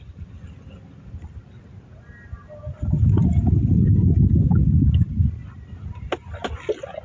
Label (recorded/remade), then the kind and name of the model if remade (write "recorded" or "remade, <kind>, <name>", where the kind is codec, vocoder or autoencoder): recorded